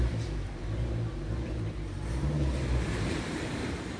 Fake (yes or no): yes